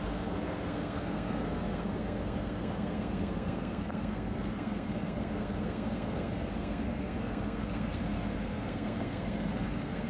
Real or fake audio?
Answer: fake